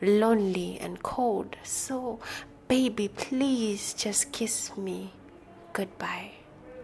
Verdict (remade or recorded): recorded